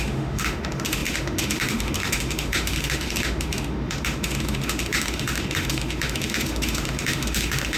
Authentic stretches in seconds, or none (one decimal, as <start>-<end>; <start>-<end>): none